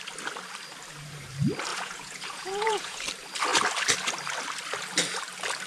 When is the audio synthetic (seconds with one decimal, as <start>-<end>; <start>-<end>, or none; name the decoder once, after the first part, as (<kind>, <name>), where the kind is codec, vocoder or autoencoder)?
1.7-3.0 (vocoder, Vocos)